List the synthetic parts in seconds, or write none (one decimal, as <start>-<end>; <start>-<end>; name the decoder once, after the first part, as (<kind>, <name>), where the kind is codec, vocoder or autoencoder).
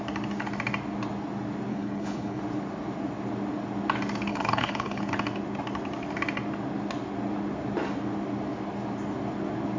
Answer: 1.7-2.4 (codec, HILCodec); 4.3-5.1